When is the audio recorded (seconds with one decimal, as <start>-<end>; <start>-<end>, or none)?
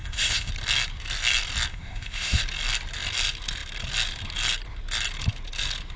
0.5-1.7; 2.4-6.0